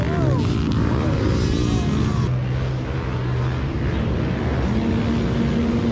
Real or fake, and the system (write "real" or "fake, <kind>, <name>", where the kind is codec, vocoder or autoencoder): real